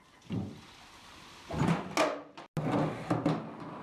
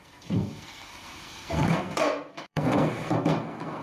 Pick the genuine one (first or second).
first